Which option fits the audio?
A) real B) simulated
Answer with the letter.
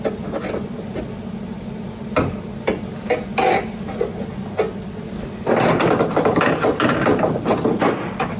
A